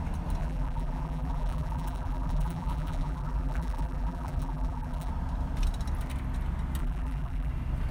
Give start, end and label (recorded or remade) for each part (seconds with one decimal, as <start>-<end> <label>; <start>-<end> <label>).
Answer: 0.0-0.4 recorded; 0.4-5.1 remade; 5.1-6.8 recorded; 6.8-7.5 remade; 7.5-7.9 recorded

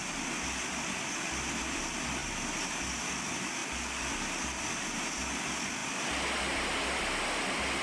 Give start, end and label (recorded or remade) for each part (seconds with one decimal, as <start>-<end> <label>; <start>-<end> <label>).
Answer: 0.0-7.8 recorded